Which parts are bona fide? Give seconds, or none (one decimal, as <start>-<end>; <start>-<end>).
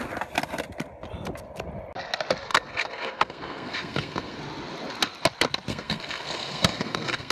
0.0-2.5; 4.4-5.7